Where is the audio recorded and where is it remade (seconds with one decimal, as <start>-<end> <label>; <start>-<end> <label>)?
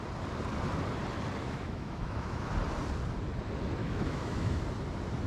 0.0-1.4 recorded; 1.4-2.5 remade; 2.5-3.8 recorded; 3.8-4.6 remade; 4.6-5.3 recorded